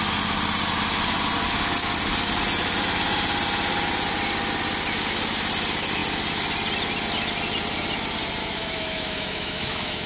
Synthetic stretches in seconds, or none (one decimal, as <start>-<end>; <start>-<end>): 8.4-10.1